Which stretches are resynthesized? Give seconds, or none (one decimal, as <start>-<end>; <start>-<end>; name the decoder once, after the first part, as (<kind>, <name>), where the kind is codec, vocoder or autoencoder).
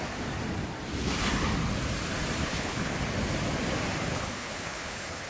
2.4-2.9 (codec, HILCodec); 4.1-5.3